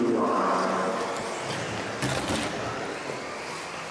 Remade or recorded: recorded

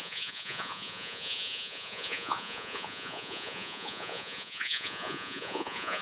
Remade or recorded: remade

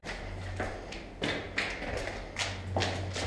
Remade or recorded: recorded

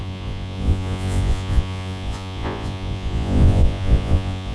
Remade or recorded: remade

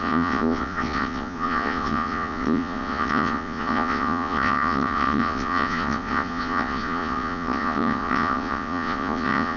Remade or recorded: remade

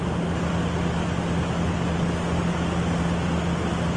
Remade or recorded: recorded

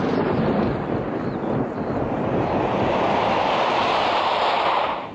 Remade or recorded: recorded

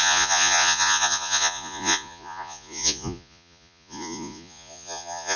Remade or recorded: remade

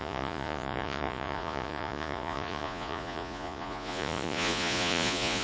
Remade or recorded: remade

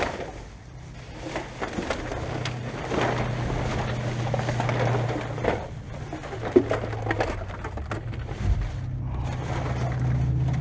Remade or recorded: recorded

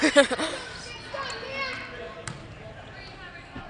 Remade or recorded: recorded